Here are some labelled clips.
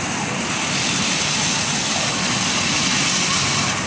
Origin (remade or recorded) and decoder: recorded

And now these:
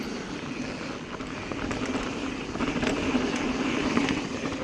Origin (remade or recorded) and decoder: remade, vocoder, BigVGAN v2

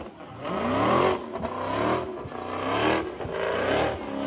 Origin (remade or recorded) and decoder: recorded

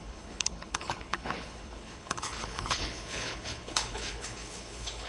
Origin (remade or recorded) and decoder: remade, codec, HILCodec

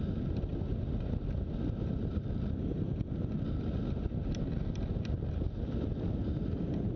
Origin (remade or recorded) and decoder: recorded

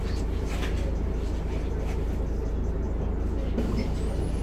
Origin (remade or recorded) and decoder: recorded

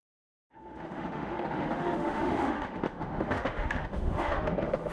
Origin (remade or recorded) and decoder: remade, autoencoder, DAC-VAE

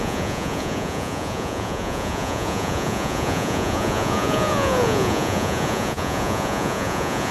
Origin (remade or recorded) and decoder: remade, vocoder, Vocos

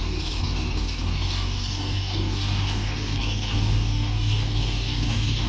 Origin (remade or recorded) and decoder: remade, codec, DAC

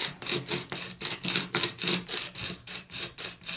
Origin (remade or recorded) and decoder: remade, vocoder, BigVGAN v2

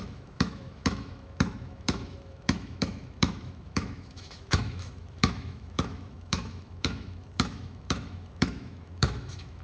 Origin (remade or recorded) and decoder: remade, autoencoder, DAC-VAE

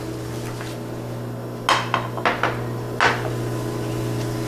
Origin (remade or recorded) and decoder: recorded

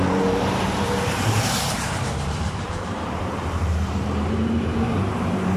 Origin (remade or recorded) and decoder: remade, vocoder, BigVGAN v2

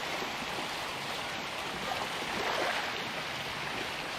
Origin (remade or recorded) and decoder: recorded